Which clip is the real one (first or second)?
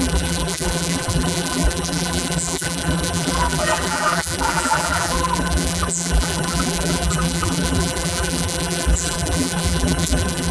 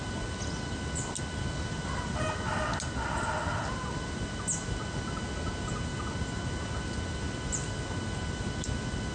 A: second